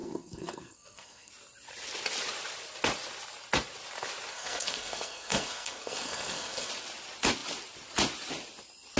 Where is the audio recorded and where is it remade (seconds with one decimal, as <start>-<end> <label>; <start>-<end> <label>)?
0.0-1.3 remade; 1.3-4.3 recorded; 4.3-6.7 remade; 6.7-9.0 recorded